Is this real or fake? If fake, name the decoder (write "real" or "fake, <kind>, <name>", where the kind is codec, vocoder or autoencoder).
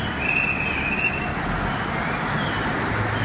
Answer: real